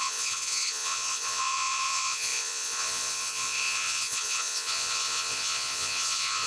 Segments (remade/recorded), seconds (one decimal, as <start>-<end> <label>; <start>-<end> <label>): 0.0-6.5 remade